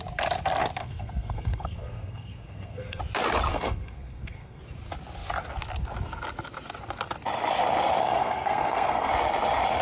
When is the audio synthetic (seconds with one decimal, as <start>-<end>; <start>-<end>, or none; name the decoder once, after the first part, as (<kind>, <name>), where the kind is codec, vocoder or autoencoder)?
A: 0.8-3.0 (codec, SNAC); 3.5-4.6; 8.0-9.1